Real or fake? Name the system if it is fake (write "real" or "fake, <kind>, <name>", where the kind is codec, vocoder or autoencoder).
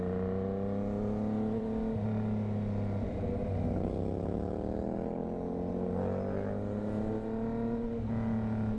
real